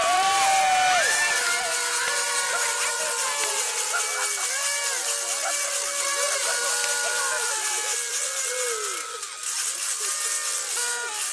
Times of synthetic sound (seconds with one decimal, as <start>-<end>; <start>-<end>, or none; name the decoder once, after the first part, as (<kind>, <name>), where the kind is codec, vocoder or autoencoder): none